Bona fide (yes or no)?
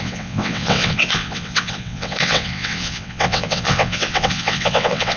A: no